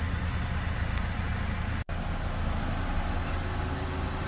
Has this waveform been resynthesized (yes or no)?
no